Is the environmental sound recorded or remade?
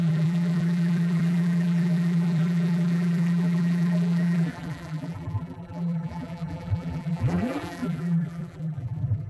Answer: remade